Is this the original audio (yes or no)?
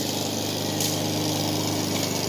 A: yes